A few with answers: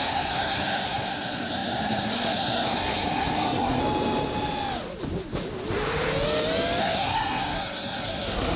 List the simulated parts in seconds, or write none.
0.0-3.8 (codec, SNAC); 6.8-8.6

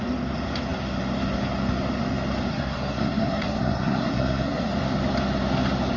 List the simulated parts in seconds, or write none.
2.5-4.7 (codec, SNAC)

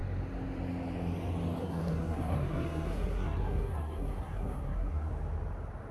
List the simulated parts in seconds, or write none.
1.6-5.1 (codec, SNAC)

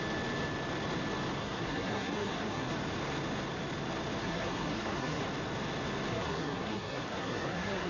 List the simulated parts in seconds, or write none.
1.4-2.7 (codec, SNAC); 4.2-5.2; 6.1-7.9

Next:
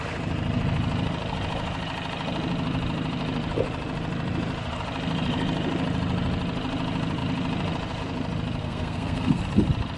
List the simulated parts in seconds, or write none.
8.6-9.4 (codec, SNAC)

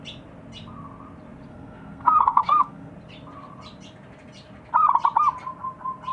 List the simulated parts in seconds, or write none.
1.5-2.9 (codec, SNAC)

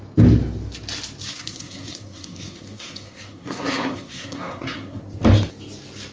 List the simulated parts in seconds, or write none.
1.3-5.0 (codec, SNAC)